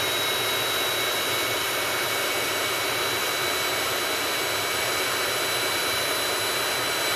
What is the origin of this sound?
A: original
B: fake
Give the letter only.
A